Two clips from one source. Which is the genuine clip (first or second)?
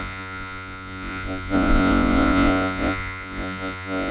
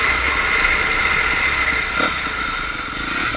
second